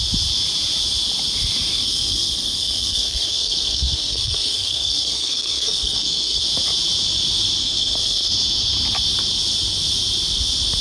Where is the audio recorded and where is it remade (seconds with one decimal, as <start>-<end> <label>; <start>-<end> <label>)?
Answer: 0.0-1.7 recorded; 1.7-6.4 remade; 6.4-7.6 recorded; 7.6-8.3 remade; 8.3-10.8 recorded